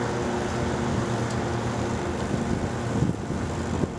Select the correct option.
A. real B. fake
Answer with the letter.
A